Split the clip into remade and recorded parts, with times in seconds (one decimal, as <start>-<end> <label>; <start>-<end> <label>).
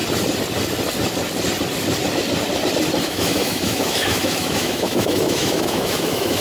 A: 0.0-3.0 recorded; 3.0-6.4 remade